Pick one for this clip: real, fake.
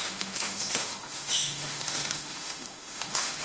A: fake